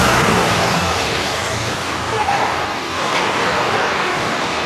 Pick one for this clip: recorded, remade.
remade